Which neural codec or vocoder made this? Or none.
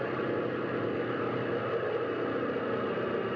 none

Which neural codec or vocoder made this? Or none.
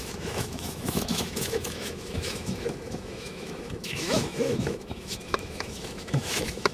autoencoder, DAC-VAE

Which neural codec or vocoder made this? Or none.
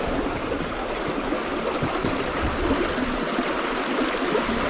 none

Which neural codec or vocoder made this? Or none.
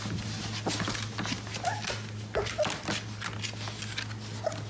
none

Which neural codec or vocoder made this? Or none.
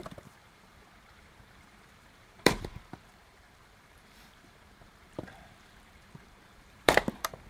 vocoder, BigVGAN v2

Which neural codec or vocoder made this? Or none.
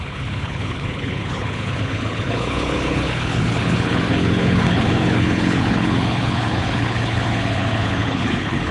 codec, HILCodec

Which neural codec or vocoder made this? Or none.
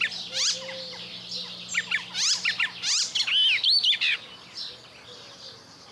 none